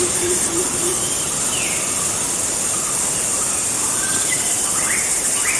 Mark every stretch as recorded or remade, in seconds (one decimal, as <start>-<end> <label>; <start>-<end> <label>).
0.0-0.9 remade; 0.9-2.1 recorded; 2.1-3.3 remade; 3.3-3.9 recorded; 3.9-5.6 remade